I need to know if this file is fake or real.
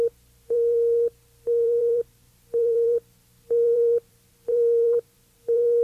fake